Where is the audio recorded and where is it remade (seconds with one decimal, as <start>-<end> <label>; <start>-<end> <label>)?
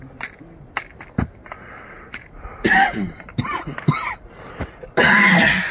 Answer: 0.0-1.4 recorded; 1.4-4.8 remade; 4.8-5.7 recorded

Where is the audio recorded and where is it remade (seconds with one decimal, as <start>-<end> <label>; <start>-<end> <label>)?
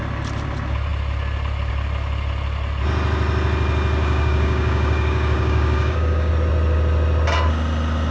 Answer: 0.0-4.0 recorded; 4.0-6.3 remade; 6.3-8.1 recorded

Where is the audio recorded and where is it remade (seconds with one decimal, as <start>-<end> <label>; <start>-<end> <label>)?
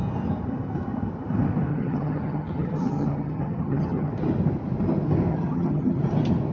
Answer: 0.0-1.7 recorded; 1.7-4.1 remade; 4.1-5.3 recorded; 5.3-6.0 remade; 6.0-6.5 recorded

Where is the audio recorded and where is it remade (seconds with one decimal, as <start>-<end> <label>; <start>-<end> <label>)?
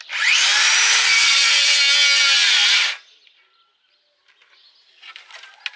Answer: 0.0-5.8 recorded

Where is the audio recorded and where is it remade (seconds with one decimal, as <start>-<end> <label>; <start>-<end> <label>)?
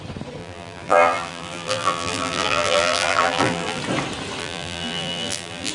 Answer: 0.0-0.4 recorded; 0.4-3.8 remade; 3.8-4.4 recorded; 4.4-5.7 remade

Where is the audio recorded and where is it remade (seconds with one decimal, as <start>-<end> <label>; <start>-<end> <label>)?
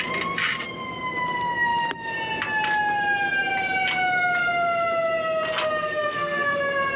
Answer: 0.0-5.8 recorded; 5.8-6.6 remade; 6.6-7.0 recorded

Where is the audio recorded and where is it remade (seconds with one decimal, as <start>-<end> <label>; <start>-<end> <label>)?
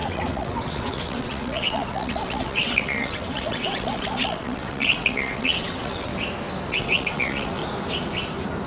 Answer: 0.0-6.1 remade; 6.1-6.7 recorded; 6.7-7.6 remade; 7.6-8.7 recorded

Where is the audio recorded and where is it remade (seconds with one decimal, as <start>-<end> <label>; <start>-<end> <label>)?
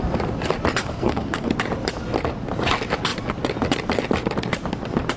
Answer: 0.0-0.8 recorded; 0.8-1.5 remade; 1.5-5.2 recorded